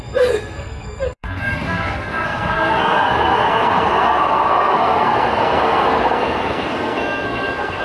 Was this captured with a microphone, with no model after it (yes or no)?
no